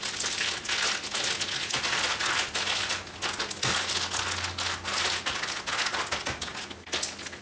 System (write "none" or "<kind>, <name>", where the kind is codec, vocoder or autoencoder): none